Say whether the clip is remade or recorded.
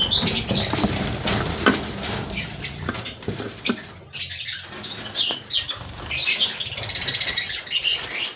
recorded